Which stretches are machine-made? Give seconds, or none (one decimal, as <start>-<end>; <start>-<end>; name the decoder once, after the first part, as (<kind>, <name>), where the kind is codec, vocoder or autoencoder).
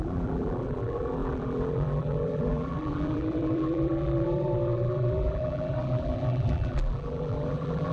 0.0-7.9 (vocoder, BigVGAN v2)